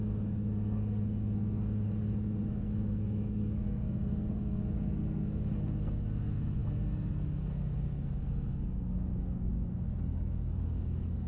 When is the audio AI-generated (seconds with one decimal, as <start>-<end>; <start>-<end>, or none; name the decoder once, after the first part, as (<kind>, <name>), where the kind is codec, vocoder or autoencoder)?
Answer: 0.0-11.3 (codec, SNAC)